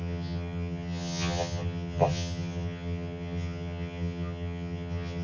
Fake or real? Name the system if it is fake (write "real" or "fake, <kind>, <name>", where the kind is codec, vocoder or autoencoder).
fake, vocoder, HiFi-GAN